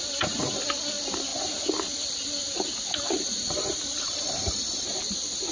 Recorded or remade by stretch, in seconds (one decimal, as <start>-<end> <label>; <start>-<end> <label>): 0.0-5.5 recorded